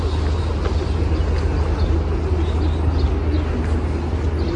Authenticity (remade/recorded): recorded